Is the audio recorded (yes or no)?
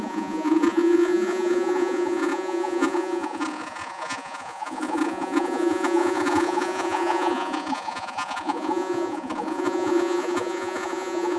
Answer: no